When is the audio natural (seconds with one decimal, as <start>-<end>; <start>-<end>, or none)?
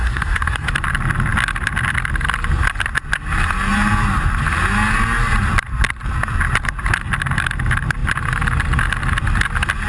0.7-9.9